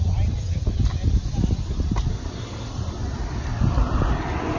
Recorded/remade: recorded